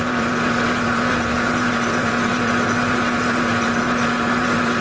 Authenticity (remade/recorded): remade